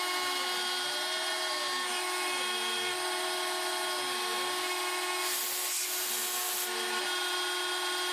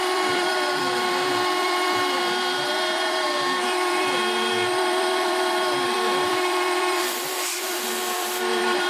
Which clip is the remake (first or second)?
second